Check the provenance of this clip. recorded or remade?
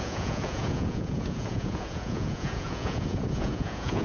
remade